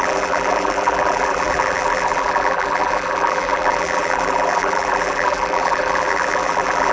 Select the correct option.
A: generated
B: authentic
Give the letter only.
A